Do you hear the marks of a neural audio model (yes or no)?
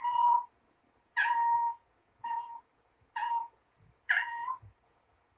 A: yes